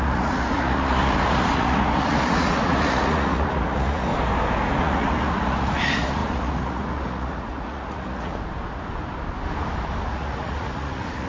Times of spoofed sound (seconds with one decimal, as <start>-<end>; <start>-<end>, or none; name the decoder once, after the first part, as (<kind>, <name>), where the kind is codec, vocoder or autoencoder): 0.0-4.1 (vocoder, Vocos); 4.8-8.3; 10.1-11.3